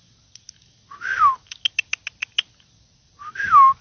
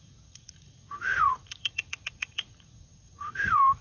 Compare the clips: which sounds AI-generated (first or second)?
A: second